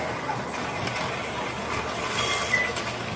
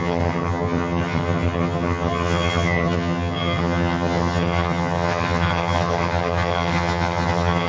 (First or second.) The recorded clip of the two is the first